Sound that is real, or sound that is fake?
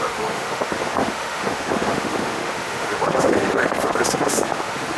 fake